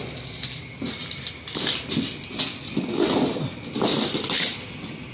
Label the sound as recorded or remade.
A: recorded